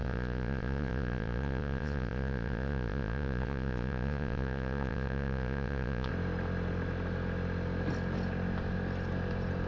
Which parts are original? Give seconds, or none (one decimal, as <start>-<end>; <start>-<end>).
6.1-9.7